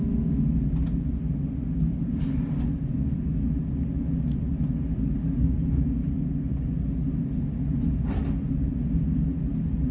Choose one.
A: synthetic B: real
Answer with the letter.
B